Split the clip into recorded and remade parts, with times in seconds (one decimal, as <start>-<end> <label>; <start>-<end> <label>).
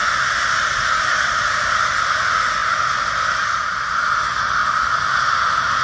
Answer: 0.0-5.8 recorded